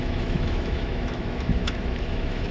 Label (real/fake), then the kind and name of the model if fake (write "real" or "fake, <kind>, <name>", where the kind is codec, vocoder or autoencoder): fake, autoencoder, DAC-VAE